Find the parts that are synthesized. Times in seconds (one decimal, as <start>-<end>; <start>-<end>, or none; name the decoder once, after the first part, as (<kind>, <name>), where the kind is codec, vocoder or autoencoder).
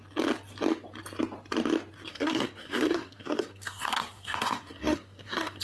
2.1-5.6 (codec, SNAC)